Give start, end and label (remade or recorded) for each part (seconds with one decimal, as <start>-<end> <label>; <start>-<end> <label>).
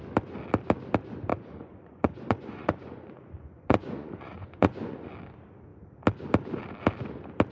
0.0-1.3 recorded; 1.3-5.1 remade; 5.1-7.5 recorded